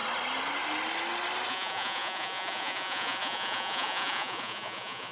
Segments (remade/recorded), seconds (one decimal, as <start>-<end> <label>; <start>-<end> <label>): 0.0-1.5 recorded; 1.5-5.1 remade